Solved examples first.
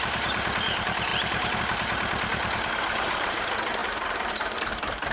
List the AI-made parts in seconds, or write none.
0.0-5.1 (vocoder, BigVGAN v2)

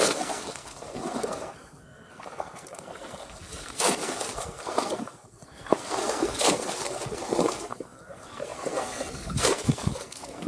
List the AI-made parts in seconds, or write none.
0.0-10.5 (codec, SNAC)

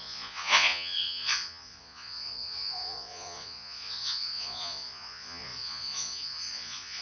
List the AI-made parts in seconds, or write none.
0.0-7.0 (vocoder, Vocos)

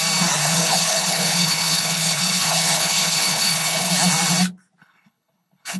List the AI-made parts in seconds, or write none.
0.4-3.9 (codec, HILCodec); 4.8-5.8